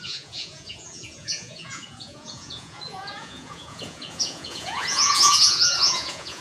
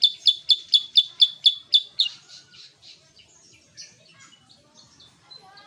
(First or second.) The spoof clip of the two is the first